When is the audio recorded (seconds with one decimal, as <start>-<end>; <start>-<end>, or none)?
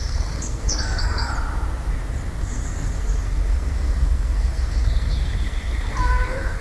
1.3-2.4